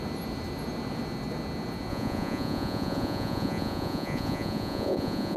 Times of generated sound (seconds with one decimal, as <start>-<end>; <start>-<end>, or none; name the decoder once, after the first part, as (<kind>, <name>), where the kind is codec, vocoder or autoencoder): 1.9-5.4 (vocoder, Vocos)